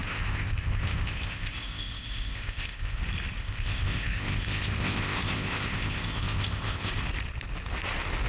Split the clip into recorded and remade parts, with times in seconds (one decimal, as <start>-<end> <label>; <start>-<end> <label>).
0.0-3.0 remade; 3.0-3.4 recorded; 3.4-6.9 remade; 6.9-8.3 recorded